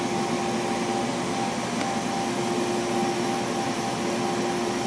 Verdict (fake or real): real